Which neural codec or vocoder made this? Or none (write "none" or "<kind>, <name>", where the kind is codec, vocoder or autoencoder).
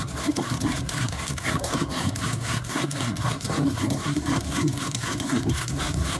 codec, SNAC